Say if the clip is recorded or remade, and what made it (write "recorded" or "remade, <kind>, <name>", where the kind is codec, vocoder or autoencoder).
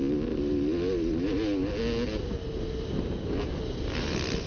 recorded